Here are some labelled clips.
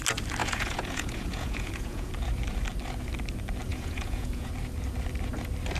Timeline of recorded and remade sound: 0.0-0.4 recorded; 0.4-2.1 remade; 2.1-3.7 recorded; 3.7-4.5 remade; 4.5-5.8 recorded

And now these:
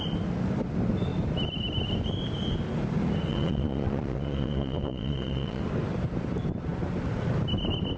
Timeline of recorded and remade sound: 0.0-3.3 recorded; 3.3-5.6 remade; 5.6-8.0 recorded

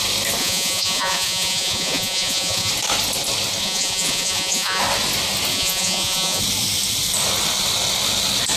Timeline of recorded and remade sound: 0.0-0.4 recorded; 0.4-2.7 remade; 2.7-3.6 recorded; 3.6-4.8 remade; 4.8-5.5 recorded; 5.5-6.4 remade; 6.4-8.6 recorded

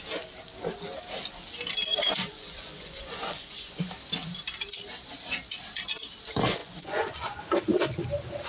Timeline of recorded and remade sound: 0.0-1.9 recorded; 1.9-3.9 remade; 3.9-6.6 recorded; 6.6-7.4 remade; 7.4-8.5 recorded

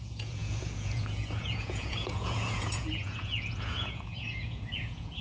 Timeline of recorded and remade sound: 0.0-5.2 remade